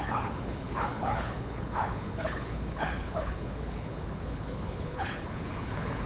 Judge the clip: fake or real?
fake